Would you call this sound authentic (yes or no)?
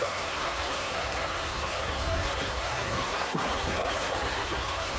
no